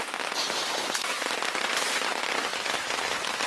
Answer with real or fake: real